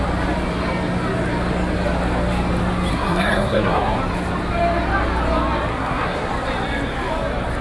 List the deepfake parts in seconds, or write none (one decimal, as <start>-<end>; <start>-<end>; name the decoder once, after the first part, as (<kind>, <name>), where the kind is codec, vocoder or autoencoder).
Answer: 2.9-4.0 (codec, SNAC); 5.7-6.3